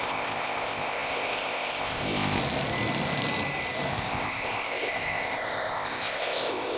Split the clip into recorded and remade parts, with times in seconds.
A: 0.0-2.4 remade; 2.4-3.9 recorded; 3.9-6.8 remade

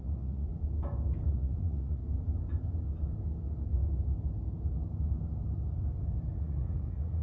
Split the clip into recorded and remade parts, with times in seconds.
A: 0.0-0.5 remade; 0.5-1.3 recorded; 1.3-2.0 remade; 2.0-6.3 recorded; 6.3-7.2 remade

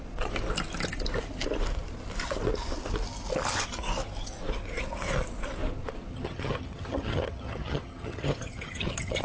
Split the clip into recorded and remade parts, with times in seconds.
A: 0.0-6.1 recorded; 6.1-9.2 remade

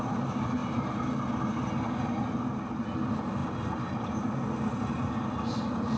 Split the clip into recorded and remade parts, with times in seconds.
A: 0.0-0.6 recorded; 0.6-1.2 remade; 1.2-3.4 recorded; 3.4-6.0 remade

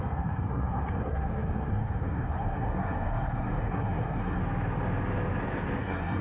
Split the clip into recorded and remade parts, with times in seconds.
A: 0.0-4.4 remade; 4.4-5.8 recorded; 5.8-6.2 remade

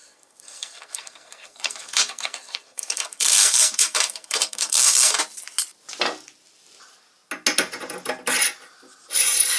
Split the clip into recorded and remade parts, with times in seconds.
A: 0.0-5.2 remade; 5.2-9.6 recorded

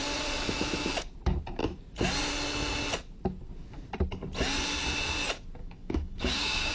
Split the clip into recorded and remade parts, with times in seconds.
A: 0.0-5.6 recorded; 5.6-6.7 remade